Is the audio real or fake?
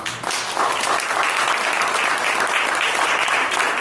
real